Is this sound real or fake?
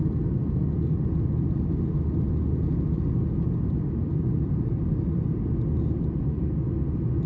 real